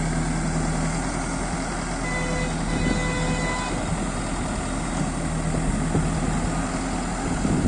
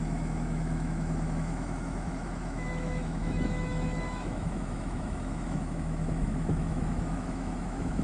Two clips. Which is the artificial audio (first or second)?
second